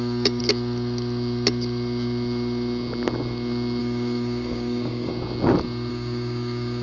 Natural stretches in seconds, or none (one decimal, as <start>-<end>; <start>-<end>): 0.4-3.8; 5.1-5.9